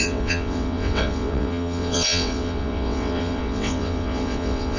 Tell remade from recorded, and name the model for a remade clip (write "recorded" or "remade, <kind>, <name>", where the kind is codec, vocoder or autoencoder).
remade, vocoder, WaveNeXt